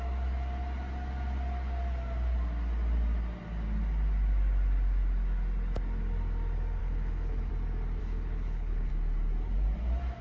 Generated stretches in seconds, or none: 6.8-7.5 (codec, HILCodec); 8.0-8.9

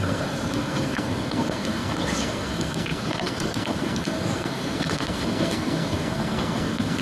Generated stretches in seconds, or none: 0.0-7.0 (codec, SNAC)

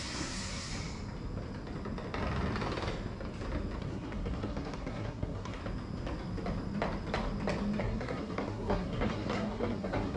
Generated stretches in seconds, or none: 0.0-0.7 (codec, SNAC); 3.8-5.6; 7.8-10.2

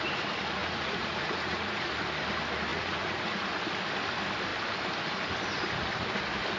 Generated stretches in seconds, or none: 0.6-1.9 (vocoder, Vocos); 2.7-3.6

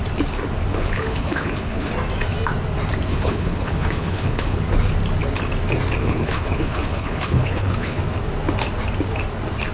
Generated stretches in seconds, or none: 0.7-1.9 (codec, HILCodec); 3.1-4.6; 6.0-8.0

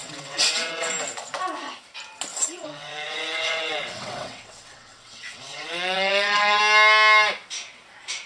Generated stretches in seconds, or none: 0.0-0.9 (vocoder, WaveNeXt); 2.3-6.6